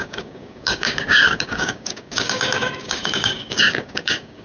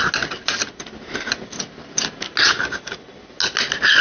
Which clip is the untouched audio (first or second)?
second